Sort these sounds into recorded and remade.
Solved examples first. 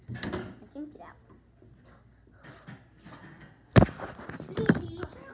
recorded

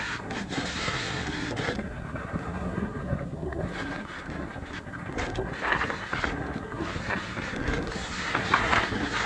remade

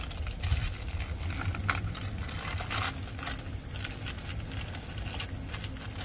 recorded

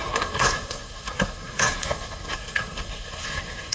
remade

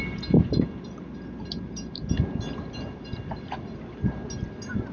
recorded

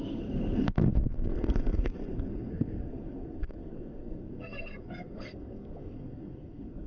remade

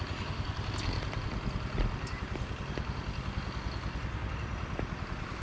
recorded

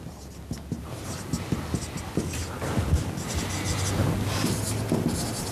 recorded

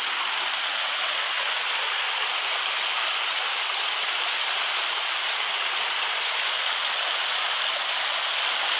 recorded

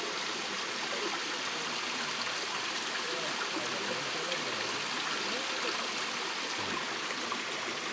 recorded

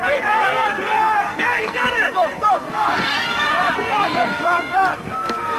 remade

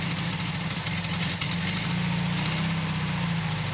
recorded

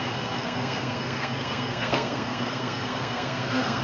remade